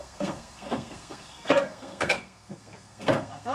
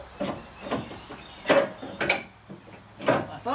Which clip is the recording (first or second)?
second